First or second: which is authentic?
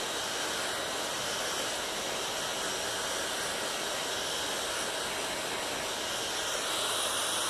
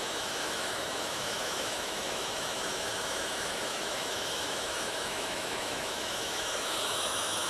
first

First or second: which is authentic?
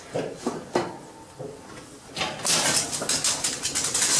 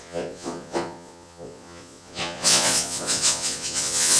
first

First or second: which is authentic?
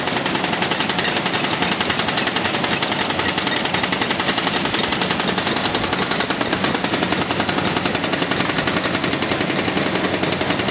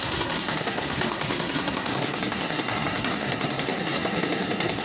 first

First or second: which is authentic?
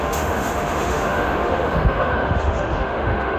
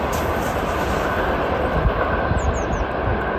second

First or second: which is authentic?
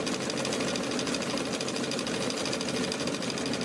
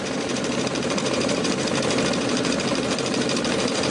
first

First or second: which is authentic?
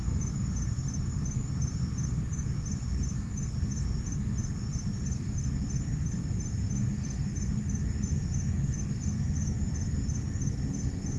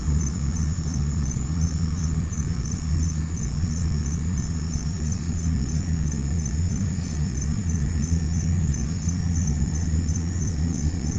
first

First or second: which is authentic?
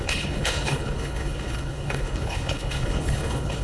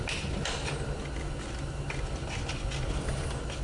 second